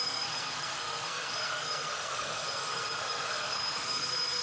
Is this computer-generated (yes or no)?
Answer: yes